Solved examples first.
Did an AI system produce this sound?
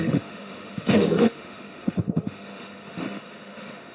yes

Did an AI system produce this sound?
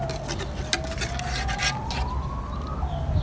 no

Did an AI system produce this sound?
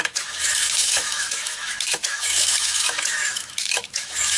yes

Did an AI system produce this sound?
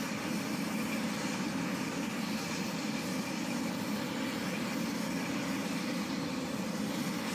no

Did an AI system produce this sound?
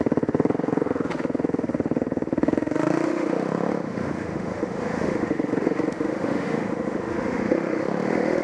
yes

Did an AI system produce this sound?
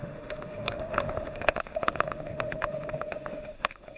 yes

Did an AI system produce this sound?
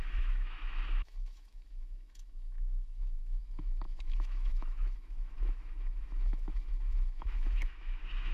yes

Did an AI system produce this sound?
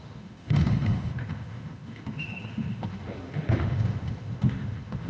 yes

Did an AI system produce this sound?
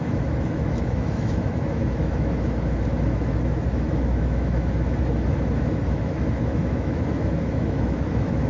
yes